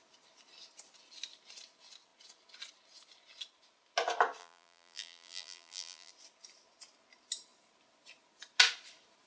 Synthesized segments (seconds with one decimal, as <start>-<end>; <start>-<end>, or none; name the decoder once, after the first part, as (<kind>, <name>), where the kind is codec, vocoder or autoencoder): 4.4-6.1 (vocoder, BigVGAN v2)

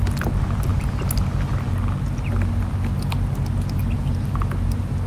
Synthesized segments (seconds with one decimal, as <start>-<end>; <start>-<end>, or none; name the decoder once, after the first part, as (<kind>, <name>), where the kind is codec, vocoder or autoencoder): none

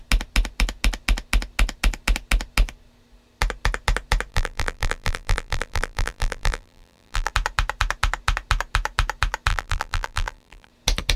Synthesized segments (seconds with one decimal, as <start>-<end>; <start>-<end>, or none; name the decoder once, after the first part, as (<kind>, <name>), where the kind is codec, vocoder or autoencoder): 4.3-7.3 (vocoder, BigVGAN v2); 9.5-10.7

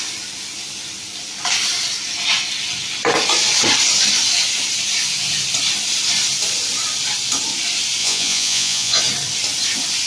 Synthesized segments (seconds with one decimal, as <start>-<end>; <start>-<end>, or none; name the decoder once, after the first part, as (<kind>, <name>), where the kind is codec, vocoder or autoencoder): 8.0-9.0 (vocoder, Vocos)